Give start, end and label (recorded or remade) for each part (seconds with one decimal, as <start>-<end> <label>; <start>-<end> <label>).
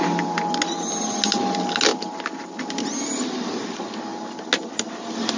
0.0-5.4 recorded